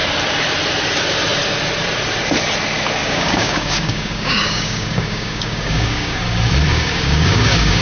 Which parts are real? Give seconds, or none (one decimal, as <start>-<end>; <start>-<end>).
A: 0.0-3.0; 6.2-6.7